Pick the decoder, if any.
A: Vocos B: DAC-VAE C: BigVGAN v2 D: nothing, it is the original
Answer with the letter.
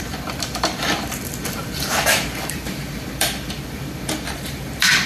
C